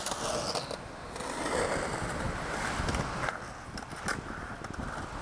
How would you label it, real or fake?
real